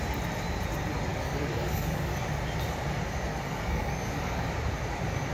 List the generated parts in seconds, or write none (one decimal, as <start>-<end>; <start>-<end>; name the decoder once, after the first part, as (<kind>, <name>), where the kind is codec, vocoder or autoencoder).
1.1-2.2 (codec, DAC); 3.3-4.5